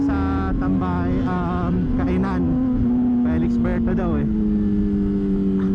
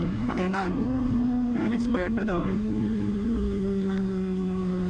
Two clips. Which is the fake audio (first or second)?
second